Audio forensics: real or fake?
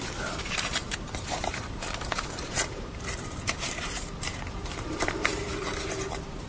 fake